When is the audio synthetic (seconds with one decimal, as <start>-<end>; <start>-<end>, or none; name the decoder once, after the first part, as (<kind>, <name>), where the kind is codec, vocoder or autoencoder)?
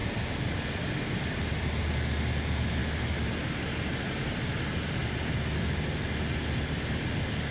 none